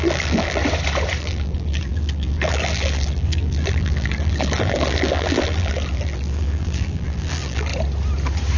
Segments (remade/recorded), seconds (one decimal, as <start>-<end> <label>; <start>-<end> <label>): 0.0-0.6 remade; 0.6-1.2 recorded; 1.2-7.7 remade; 7.7-8.6 recorded